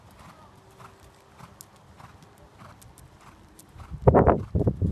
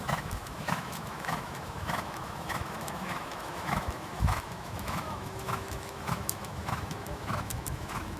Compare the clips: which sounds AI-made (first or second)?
second